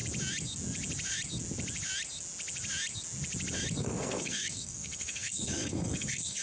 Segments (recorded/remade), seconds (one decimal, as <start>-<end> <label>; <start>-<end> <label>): 0.0-3.8 recorded; 3.8-6.4 remade